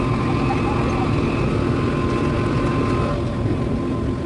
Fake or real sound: real